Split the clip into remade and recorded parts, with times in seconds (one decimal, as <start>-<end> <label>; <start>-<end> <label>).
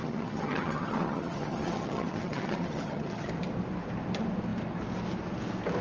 0.0-3.3 remade; 3.3-5.8 recorded